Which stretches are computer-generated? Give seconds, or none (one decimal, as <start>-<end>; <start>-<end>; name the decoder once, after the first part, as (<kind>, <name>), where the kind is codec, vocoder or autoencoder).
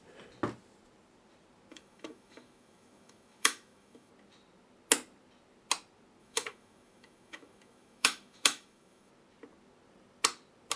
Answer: 1.7-4.1 (autoencoder, DAC-VAE); 6.2-9.1